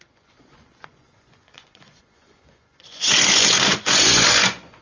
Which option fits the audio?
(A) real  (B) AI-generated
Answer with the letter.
B